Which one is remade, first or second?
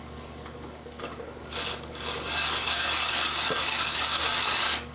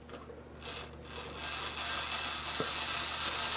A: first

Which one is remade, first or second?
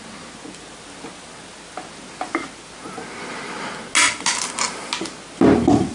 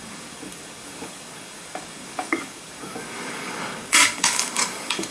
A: second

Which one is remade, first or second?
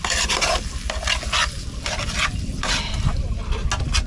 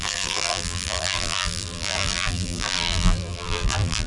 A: second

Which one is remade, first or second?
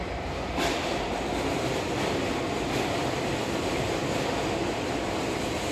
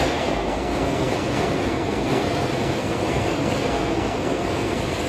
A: second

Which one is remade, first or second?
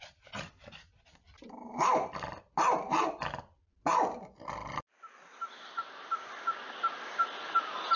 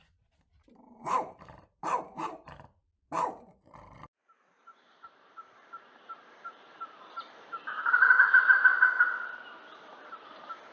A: second